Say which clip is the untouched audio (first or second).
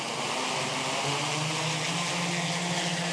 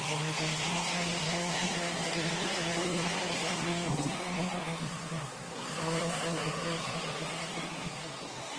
first